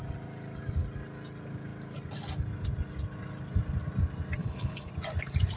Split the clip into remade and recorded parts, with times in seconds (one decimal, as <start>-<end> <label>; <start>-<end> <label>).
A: 0.0-4.4 recorded; 4.4-4.9 remade; 4.9-5.6 recorded